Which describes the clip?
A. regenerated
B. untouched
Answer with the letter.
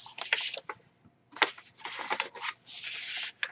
B